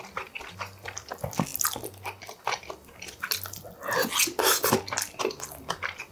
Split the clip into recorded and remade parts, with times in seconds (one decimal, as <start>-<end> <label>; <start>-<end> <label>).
0.0-6.1 recorded